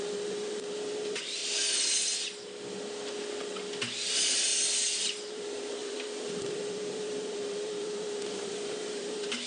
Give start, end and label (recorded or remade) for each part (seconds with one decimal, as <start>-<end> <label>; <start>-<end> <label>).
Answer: 0.0-1.4 remade; 1.4-4.1 recorded; 4.1-4.5 remade; 4.5-5.0 recorded; 5.0-9.5 remade